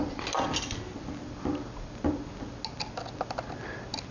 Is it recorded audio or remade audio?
recorded